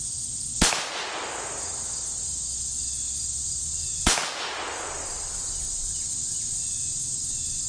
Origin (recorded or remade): recorded